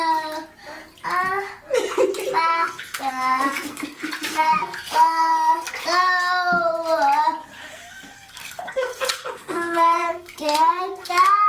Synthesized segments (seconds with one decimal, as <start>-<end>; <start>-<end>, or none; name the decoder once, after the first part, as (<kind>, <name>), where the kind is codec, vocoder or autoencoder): 2.5-5.7 (codec, SNAC); 7.5-11.5